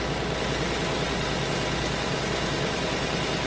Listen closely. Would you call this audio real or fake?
real